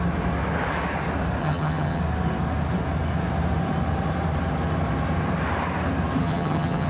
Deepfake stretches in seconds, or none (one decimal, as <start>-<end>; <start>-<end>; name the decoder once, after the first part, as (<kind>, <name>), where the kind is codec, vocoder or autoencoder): 1.4-2.0 (vocoder, HiFi-GAN); 6.2-6.9